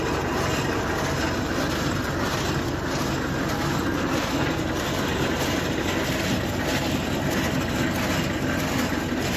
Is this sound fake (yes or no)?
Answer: no